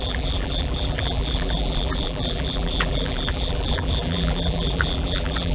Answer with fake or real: fake